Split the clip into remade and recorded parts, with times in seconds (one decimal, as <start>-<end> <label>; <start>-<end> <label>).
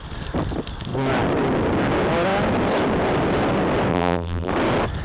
0.0-3.9 recorded; 3.9-4.5 remade; 4.5-5.0 recorded